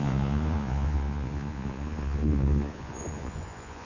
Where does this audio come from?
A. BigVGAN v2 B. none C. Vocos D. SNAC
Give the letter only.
C